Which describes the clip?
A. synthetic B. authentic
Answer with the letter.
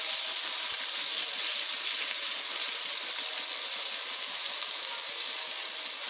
B